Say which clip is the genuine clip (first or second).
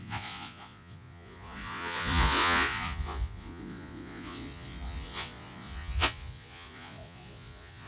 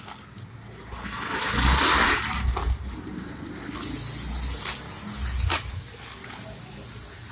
second